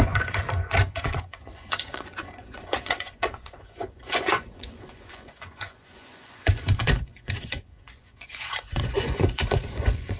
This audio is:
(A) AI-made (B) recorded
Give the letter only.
A